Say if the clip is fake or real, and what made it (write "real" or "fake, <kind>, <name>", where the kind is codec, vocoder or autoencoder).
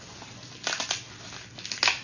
real